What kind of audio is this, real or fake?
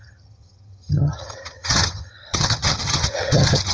fake